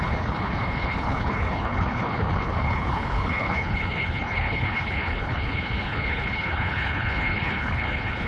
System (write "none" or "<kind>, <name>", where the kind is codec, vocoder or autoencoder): codec, HILCodec